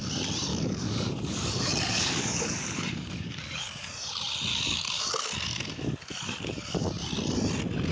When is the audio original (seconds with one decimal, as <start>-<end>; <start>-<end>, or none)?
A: 0.0-0.5; 4.1-4.5; 5.1-5.5; 6.9-7.9